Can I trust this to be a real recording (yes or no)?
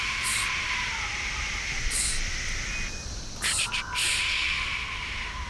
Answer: yes